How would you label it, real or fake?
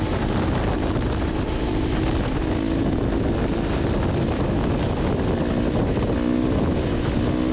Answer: real